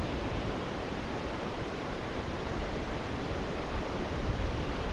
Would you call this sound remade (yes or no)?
yes